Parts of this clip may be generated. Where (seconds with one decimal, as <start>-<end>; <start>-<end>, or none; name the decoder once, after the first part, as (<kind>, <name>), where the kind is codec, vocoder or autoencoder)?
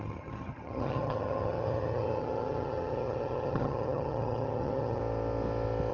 0.0-5.0 (vocoder, HiFi-GAN)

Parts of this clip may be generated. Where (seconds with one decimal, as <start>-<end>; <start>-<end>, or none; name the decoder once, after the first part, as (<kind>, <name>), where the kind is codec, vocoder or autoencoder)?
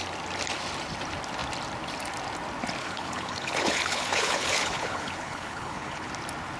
2.8-6.1 (codec, HILCodec)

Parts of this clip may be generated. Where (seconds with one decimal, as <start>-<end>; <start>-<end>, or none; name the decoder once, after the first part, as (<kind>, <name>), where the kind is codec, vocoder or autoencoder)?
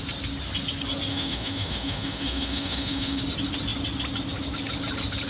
1.1-3.2 (autoencoder, DAC-VAE)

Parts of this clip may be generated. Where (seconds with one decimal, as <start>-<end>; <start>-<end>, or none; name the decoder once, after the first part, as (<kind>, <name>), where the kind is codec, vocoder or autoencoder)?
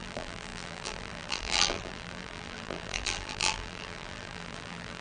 0.0-5.0 (vocoder, BigVGAN v2)